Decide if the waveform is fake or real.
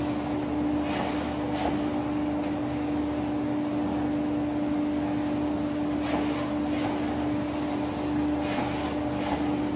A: real